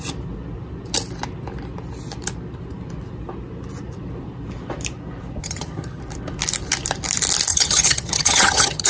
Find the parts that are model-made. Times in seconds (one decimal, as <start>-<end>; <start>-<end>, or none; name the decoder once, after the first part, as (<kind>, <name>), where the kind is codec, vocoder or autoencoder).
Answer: 5.4-6.0 (vocoder, HiFi-GAN); 7.5-8.9